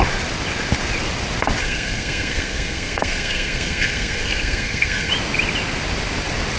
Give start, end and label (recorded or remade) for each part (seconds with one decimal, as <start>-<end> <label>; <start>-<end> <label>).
0.0-1.6 recorded; 1.6-5.1 remade; 5.1-6.6 recorded